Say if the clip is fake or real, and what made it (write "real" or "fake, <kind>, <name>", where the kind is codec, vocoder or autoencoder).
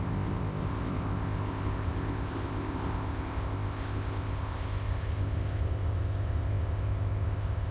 fake, codec, ZipCodec